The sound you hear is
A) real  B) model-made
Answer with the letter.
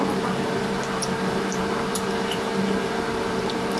B